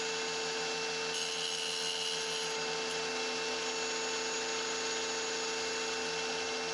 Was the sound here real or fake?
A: real